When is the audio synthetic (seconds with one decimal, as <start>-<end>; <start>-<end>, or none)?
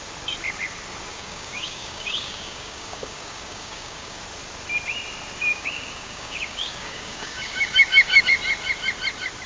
1.1-4.2; 5.5-8.2